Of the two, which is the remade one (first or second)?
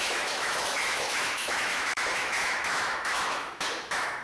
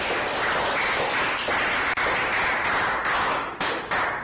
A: first